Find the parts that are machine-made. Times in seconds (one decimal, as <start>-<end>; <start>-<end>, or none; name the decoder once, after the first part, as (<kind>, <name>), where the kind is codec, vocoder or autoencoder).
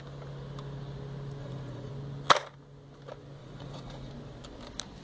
1.4-1.9 (vocoder, Vocos); 3.4-4.1